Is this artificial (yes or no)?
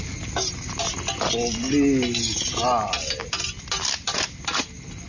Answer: no